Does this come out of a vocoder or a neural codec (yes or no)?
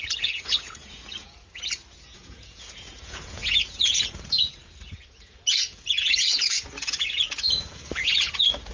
yes